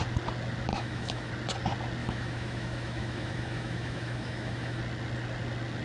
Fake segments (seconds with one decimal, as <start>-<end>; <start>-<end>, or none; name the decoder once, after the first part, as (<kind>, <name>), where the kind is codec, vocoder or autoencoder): 0.7-1.3 (autoencoder, DAC-VAE); 2.0-4.8